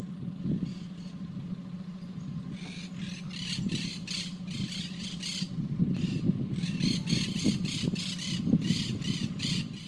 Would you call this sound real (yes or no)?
yes